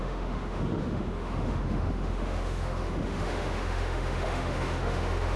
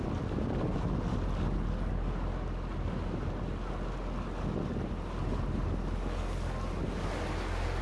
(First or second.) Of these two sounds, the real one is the second